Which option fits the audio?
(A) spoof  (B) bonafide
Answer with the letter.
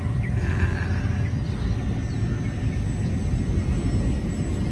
B